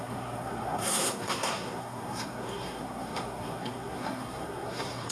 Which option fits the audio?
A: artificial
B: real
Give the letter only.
A